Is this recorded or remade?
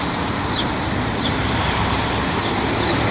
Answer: remade